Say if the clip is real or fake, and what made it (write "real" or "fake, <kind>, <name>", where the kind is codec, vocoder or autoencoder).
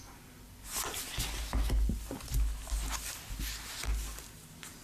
real